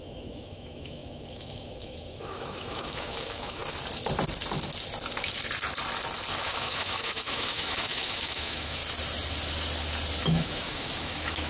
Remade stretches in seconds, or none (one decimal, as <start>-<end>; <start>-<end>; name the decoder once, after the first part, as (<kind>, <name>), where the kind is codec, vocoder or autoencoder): 0.0-3.6 (autoencoder, DAC-VAE); 6.4-8.8; 10.2-11.5